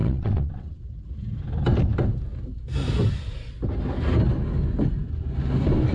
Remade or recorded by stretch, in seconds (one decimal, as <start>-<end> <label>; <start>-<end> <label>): 0.0-0.8 remade; 0.8-5.9 recorded